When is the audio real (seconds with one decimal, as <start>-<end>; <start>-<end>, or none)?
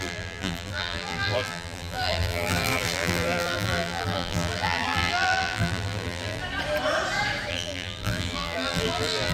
6.4-7.5